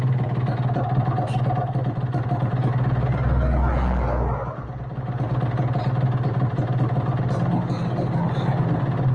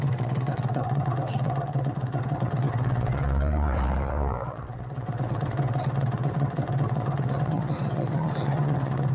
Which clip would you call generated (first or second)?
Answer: second